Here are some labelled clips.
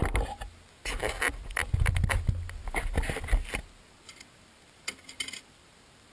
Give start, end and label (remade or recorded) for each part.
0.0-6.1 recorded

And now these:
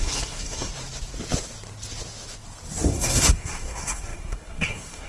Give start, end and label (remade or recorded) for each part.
0.0-0.7 remade; 0.7-2.9 recorded; 2.9-5.1 remade

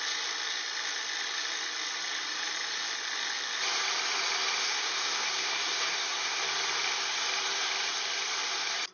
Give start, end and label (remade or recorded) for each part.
0.0-4.6 recorded; 4.6-6.4 remade; 6.4-8.9 recorded

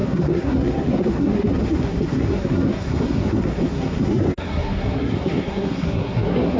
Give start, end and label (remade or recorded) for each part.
0.0-6.6 remade

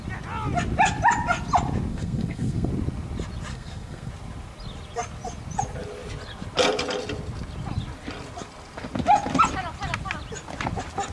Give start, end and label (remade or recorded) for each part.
0.0-1.9 recorded; 1.9-2.7 remade; 2.7-3.5 recorded; 3.5-4.1 remade; 4.1-11.1 recorded

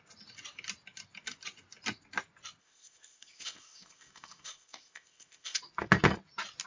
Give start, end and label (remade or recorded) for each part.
0.0-2.6 recorded; 2.6-5.6 remade; 5.6-6.7 recorded